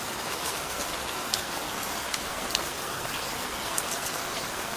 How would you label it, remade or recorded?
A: remade